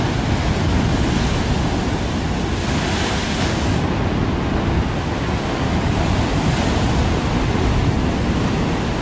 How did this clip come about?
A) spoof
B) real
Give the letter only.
B